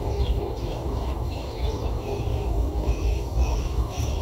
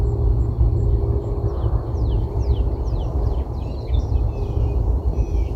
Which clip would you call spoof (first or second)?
first